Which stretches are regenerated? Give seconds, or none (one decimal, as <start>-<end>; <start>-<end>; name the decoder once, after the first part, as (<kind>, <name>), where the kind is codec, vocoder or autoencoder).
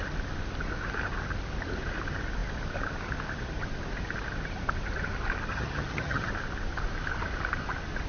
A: 5.5-6.3 (vocoder, HiFi-GAN)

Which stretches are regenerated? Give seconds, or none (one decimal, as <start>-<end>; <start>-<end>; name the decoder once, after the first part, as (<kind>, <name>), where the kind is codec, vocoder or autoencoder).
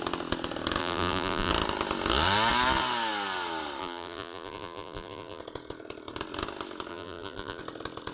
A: 0.8-1.5 (vocoder, BigVGAN v2); 3.8-5.4; 6.9-7.6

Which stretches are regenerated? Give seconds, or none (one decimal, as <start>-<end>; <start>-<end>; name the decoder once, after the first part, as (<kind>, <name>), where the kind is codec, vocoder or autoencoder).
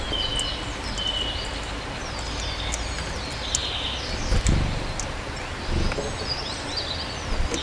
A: none